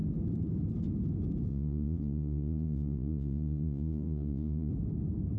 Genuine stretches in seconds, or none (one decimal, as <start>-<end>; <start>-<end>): 0.0-1.5; 4.7-5.4